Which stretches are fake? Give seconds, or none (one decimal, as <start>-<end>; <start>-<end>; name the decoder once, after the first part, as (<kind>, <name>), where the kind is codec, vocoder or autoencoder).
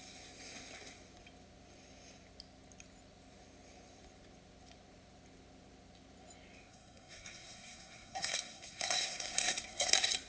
6.7-9.9 (codec, SNAC)